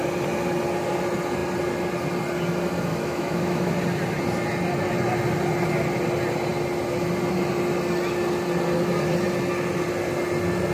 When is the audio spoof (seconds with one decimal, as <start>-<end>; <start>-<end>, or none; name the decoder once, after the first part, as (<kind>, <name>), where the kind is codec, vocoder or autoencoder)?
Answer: 2.9-3.7 (autoencoder, DAC-VAE)